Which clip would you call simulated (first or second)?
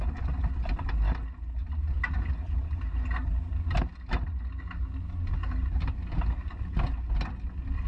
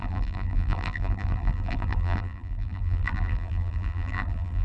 second